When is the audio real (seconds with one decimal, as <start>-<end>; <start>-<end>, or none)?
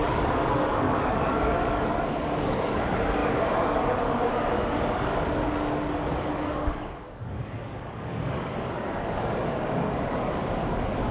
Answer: none